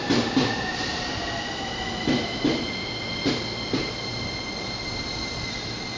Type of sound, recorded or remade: recorded